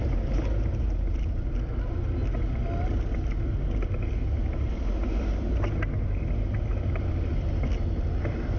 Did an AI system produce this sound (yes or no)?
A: no